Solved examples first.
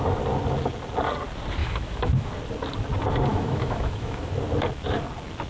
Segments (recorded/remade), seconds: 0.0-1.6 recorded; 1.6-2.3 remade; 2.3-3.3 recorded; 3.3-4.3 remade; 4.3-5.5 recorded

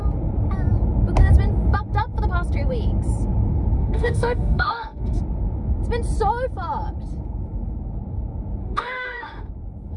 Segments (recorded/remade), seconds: 0.0-3.8 recorded; 3.8-5.2 remade; 5.2-8.6 recorded; 8.6-9.5 remade; 9.5-10.0 recorded

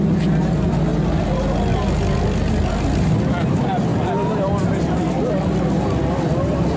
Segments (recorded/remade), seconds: 0.0-6.8 recorded

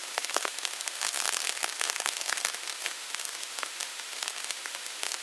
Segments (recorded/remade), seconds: 0.0-5.2 remade

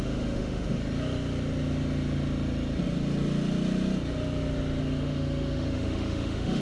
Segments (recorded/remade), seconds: 0.0-0.8 remade; 0.8-4.8 recorded; 4.8-6.6 remade

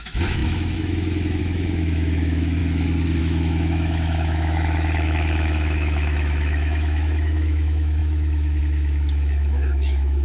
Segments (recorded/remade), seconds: 0.0-2.6 remade; 2.6-3.2 recorded; 3.2-10.2 remade

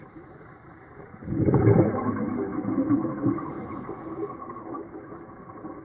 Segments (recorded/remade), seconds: 0.0-3.5 remade; 3.5-4.0 recorded; 4.0-5.2 remade; 5.2-5.8 recorded